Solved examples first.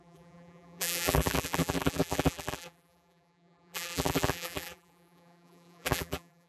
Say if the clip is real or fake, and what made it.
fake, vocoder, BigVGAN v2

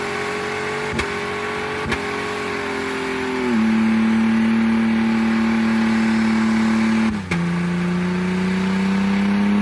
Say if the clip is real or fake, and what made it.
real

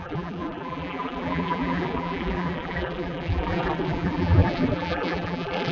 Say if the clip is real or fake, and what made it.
fake, vocoder, BigVGAN v2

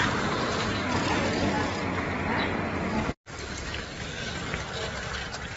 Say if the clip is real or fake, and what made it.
real